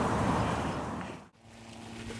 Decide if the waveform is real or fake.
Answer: real